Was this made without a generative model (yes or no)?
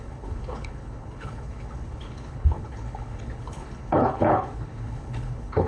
no